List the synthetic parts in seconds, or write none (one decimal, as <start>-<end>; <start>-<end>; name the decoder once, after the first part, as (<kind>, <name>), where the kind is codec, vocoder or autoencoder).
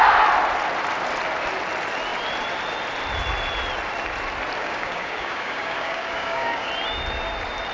4.6-6.7 (codec, DAC)